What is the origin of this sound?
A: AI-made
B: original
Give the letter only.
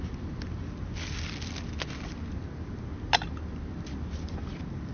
B